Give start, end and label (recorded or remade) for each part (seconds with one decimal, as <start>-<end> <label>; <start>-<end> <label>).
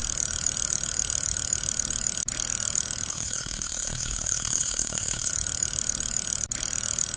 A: 0.0-3.1 recorded; 3.1-5.3 remade; 5.3-7.2 recorded